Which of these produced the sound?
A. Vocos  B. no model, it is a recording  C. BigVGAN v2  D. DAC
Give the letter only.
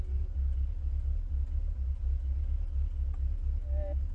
B